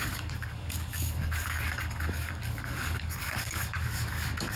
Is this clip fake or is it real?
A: fake